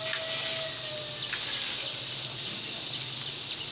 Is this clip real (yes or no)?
yes